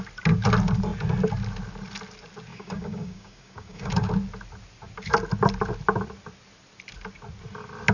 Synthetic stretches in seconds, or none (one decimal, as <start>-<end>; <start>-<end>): 2.5-3.9